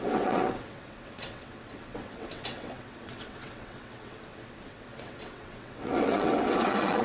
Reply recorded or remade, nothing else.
remade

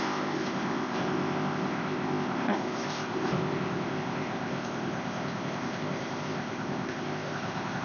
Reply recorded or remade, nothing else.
remade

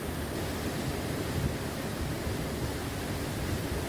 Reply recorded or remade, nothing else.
recorded